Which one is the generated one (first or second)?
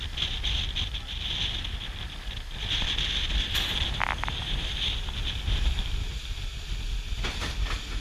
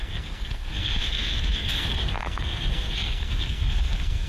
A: second